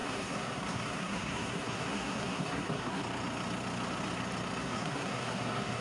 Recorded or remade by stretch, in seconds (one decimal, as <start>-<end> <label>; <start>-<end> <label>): 0.0-3.0 remade; 3.0-4.6 recorded; 4.6-5.8 remade